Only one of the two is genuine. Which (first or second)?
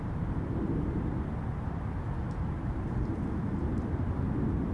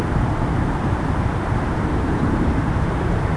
first